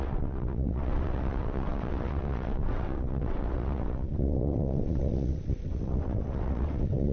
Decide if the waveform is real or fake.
fake